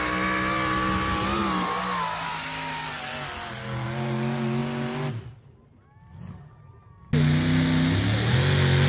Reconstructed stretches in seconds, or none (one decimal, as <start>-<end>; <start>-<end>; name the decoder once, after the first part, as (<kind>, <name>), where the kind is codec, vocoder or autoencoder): none